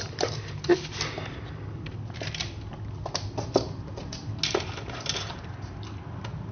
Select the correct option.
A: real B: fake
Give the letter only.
A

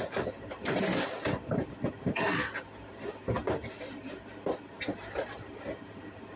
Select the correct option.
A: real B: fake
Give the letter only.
B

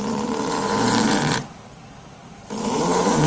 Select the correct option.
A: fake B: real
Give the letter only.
A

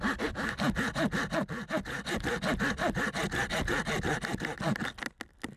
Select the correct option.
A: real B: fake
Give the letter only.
A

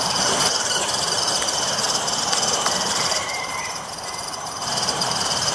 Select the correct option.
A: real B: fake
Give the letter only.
B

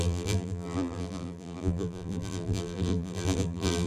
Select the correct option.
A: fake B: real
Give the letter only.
A